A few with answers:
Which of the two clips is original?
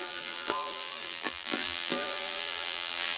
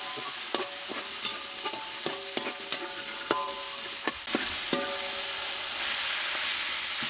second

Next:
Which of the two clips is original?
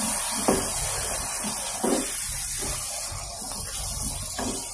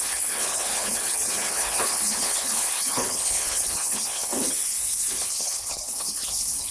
first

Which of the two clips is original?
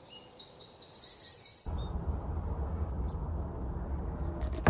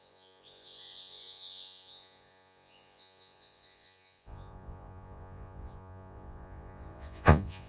first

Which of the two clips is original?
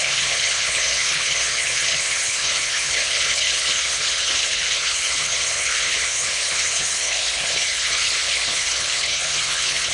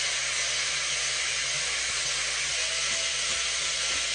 second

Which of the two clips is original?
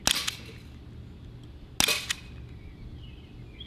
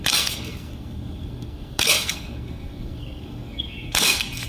first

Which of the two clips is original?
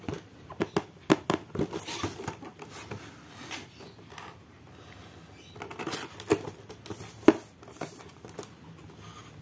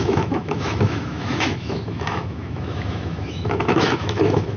first